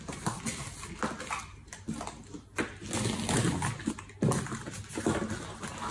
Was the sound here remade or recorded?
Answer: recorded